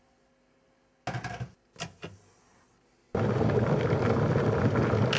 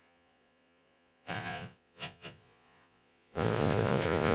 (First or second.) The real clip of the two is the first